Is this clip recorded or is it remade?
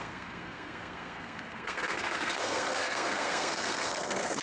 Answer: remade